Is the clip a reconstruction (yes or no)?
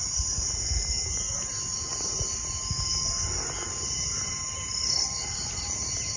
no